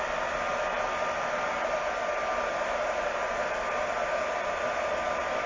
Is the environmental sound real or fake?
real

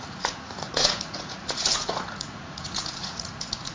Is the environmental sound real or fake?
fake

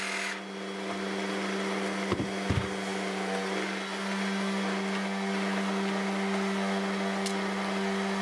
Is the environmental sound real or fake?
real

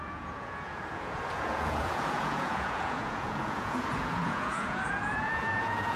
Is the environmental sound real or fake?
fake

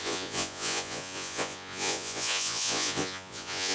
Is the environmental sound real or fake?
fake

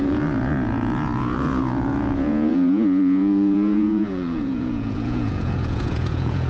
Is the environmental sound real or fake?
fake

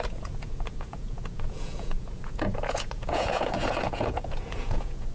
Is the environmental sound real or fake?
fake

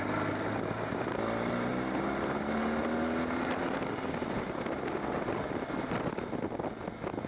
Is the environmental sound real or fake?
real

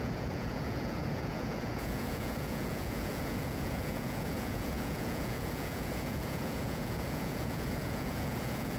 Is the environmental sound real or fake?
fake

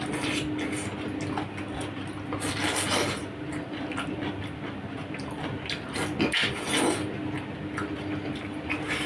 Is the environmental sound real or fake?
real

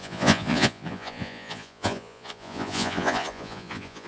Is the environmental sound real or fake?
fake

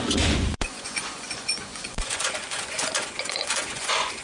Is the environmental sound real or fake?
fake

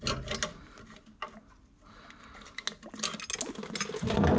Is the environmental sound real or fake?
real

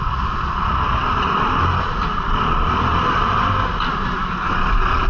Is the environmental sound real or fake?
real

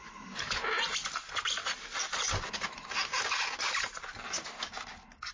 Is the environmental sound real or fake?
real